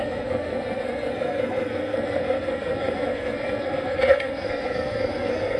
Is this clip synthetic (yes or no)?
yes